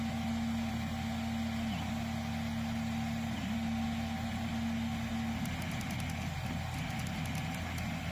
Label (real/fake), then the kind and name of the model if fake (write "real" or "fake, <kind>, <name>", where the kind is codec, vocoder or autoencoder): real